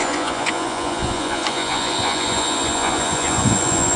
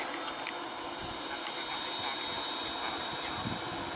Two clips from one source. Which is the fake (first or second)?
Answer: first